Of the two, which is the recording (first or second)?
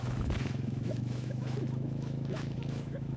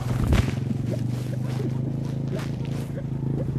second